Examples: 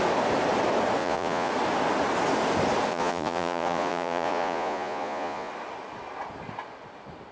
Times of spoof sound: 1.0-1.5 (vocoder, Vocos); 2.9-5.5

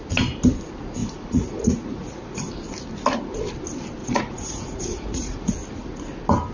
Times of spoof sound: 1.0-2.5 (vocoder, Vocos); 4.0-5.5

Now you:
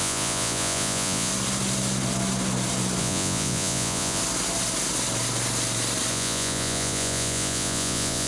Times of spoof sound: 0.0-1.3 (vocoder, Vocos); 3.0-4.2; 6.1-8.3

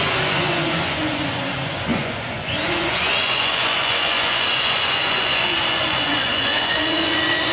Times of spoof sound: 0.0-7.5 (vocoder, Vocos)

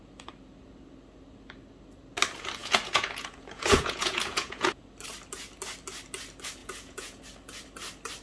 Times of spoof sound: 2.6-4.8 (vocoder, Vocos); 6.6-7.2

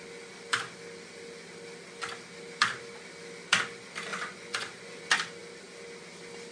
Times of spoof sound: 4.1-5.0 (vocoder, Vocos)

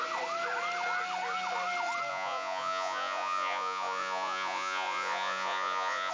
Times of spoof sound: 2.1-6.1 (vocoder, Vocos)